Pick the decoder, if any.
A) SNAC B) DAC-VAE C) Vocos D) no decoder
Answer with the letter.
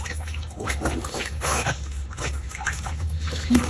B